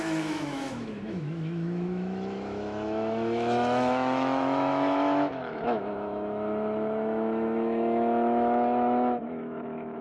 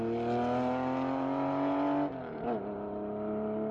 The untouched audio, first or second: second